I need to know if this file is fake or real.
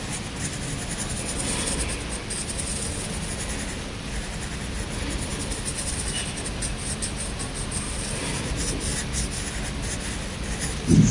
real